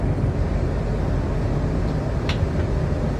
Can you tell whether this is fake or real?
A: real